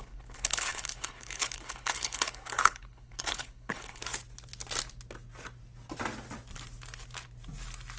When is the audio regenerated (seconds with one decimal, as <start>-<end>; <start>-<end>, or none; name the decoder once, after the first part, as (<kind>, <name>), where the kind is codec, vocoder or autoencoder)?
0.0-4.0 (codec, HILCodec)